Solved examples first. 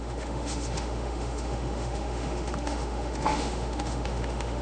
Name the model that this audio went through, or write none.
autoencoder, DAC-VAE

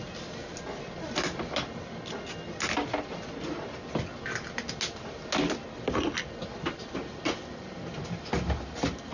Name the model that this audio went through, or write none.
none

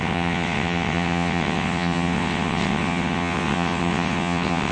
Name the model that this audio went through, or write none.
vocoder, WaveNeXt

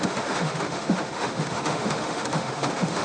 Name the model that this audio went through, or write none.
autoencoder, DAC-VAE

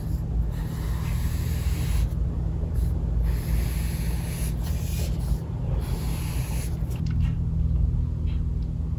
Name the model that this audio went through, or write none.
none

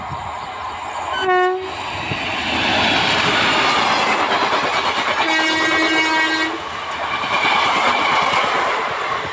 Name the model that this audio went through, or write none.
none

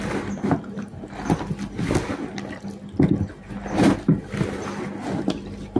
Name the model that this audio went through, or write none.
none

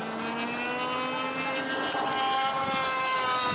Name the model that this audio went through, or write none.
none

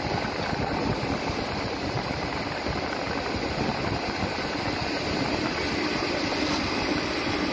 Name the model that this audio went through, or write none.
none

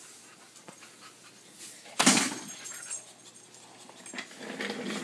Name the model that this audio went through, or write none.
none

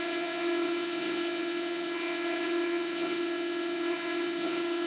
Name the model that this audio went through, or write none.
vocoder, WaveNeXt